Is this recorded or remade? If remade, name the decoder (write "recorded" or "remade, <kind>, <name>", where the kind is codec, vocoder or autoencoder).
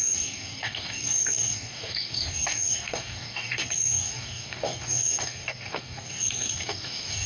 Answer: remade, codec, DAC